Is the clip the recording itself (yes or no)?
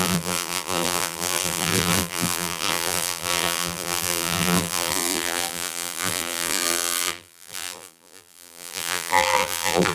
no